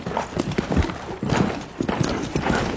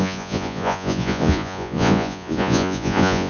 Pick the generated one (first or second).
second